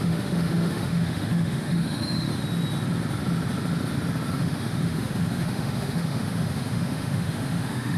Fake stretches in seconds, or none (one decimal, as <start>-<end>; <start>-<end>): 0.0-2.3; 4.3-8.0